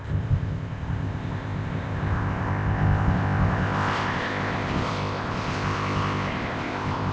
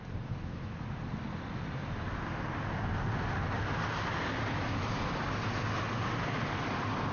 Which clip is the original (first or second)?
second